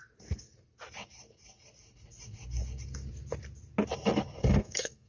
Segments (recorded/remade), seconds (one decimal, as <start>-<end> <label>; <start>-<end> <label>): 0.0-4.4 recorded; 4.4-5.1 remade